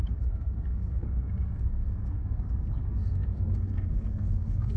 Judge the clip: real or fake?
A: fake